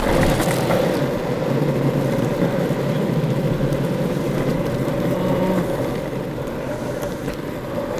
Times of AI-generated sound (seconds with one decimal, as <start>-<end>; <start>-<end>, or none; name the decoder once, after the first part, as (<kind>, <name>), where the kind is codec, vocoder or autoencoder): none